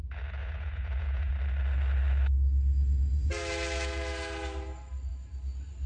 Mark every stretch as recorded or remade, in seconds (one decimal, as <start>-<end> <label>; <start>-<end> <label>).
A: 0.0-0.4 recorded; 0.4-1.3 remade; 1.3-5.9 recorded